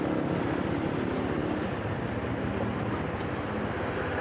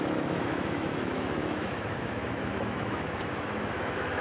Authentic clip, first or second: first